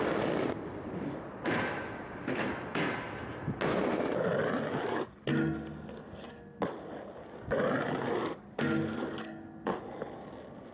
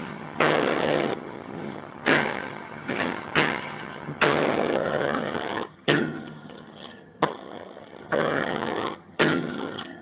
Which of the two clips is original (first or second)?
first